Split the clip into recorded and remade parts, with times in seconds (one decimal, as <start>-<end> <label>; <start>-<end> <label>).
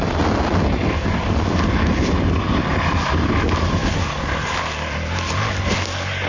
0.0-6.3 recorded